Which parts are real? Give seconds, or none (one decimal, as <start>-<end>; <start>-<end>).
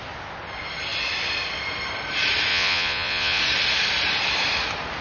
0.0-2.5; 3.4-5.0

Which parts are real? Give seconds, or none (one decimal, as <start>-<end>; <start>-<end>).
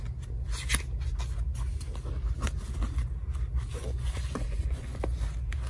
0.0-3.8; 5.0-5.7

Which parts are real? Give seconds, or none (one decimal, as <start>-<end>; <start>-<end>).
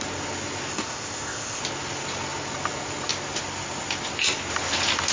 0.0-0.7; 1.6-5.1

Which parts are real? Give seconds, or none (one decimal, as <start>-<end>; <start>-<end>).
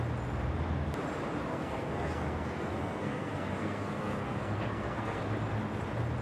0.0-1.5; 5.2-6.2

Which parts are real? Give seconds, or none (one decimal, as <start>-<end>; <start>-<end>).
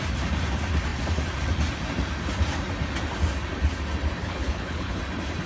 0.0-4.2; 5.0-5.5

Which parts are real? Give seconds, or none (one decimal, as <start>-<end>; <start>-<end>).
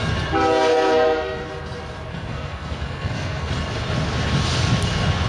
0.0-0.7; 1.5-2.1; 3.5-5.3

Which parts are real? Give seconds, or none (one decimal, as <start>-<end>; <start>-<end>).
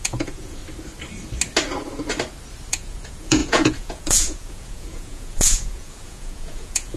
0.6-2.7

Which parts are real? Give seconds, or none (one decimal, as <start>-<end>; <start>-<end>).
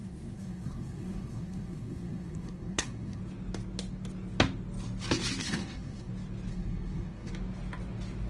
3.2-5.4; 6.1-6.5; 7.3-8.3